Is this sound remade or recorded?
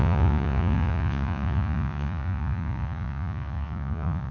remade